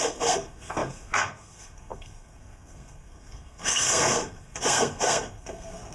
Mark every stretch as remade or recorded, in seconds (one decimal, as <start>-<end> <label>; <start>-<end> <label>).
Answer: 0.0-5.9 remade